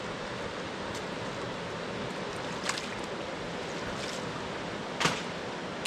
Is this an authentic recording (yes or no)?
yes